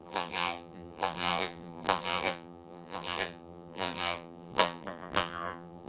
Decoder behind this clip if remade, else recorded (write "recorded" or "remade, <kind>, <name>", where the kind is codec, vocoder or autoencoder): remade, vocoder, BigVGAN v2